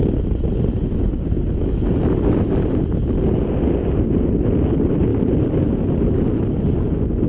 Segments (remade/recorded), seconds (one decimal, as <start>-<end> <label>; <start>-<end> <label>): 0.0-7.3 recorded